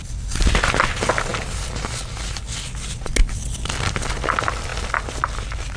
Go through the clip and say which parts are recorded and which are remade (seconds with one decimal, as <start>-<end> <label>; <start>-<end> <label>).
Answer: 0.0-5.8 recorded